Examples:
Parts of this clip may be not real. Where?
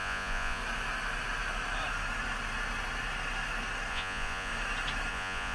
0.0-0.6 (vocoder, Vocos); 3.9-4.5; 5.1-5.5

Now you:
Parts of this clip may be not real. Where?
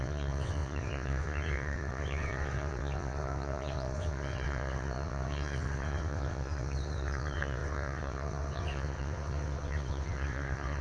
0.0-10.8 (vocoder, WaveNeXt)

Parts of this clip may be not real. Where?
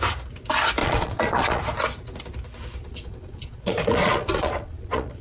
0.8-1.6 (vocoder, Vocos); 2.8-5.2